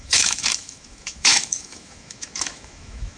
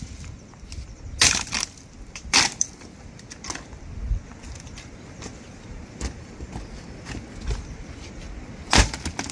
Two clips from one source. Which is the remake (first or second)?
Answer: first